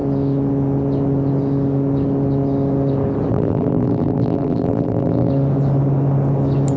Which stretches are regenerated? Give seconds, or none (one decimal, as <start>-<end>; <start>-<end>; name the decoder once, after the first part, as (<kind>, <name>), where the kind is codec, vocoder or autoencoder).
3.3-5.3 (vocoder, BigVGAN v2)